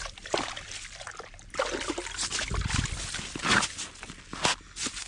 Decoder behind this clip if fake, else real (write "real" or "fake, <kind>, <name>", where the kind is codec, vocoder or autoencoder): real